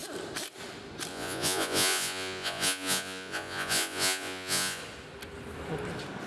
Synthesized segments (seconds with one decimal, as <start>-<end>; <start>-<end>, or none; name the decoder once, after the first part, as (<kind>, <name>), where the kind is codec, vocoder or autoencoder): 1.1-4.8 (vocoder, Vocos)